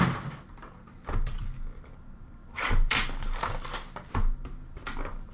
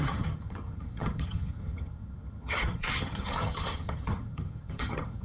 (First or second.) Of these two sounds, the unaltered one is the first